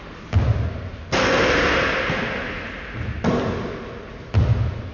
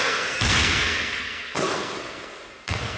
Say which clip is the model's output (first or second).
second